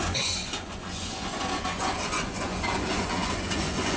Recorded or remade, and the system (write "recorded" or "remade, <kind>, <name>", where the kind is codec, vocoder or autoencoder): remade, vocoder, Vocos